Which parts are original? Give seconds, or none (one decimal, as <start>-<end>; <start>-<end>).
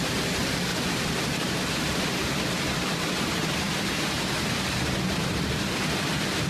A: 0.0-6.5